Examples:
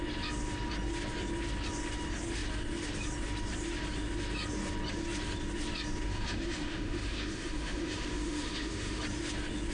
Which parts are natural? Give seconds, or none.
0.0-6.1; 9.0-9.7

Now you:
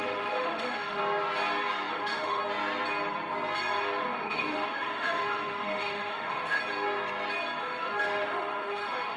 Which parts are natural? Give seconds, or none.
1.0-1.9; 2.4-4.0; 6.6-7.6

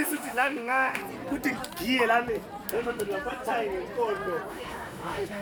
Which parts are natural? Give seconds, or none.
1.0-2.7; 3.1-4.5

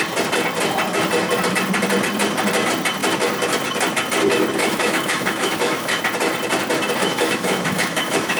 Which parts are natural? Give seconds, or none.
0.0-4.6; 6.0-7.0